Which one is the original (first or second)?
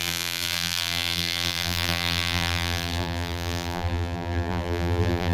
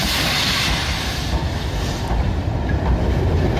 second